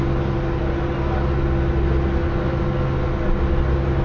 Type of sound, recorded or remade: recorded